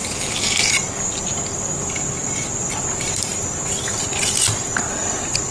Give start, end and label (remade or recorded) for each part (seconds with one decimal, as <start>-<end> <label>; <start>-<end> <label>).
0.0-1.9 remade; 1.9-5.5 recorded